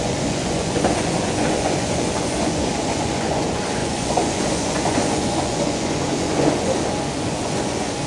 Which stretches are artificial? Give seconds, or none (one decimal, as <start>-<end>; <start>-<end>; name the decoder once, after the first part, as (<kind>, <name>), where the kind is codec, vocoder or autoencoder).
0.0-8.1 (vocoder, Vocos)

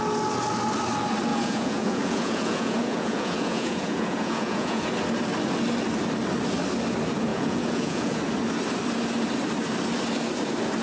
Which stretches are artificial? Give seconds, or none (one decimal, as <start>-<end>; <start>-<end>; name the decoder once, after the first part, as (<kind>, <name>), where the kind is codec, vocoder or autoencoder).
1.3-4.9 (vocoder, Vocos); 7.3-8.2

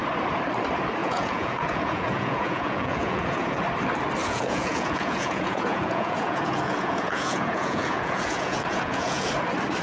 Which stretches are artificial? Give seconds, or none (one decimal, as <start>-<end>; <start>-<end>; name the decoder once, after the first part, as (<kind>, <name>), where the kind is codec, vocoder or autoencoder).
1.0-3.6 (vocoder, Vocos); 4.2-9.3

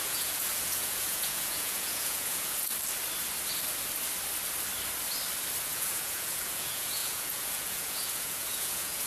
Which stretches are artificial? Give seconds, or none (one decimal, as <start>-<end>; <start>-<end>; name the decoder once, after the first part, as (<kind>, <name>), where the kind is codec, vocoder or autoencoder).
0.0-2.7 (vocoder, Vocos); 5.6-9.1